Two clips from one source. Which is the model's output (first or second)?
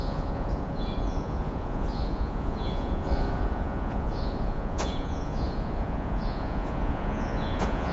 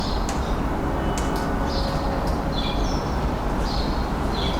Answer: first